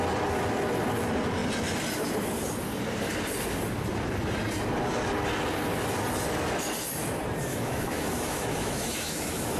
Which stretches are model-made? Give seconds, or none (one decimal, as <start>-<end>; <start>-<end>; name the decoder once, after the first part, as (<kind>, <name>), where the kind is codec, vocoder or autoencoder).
7.5-9.6 (autoencoder, DAC-VAE)